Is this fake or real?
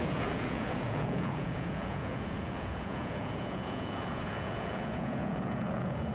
fake